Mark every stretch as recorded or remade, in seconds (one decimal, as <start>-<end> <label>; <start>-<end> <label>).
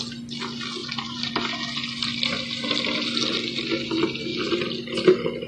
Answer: 0.0-0.8 recorded; 0.8-1.3 remade; 1.3-5.5 recorded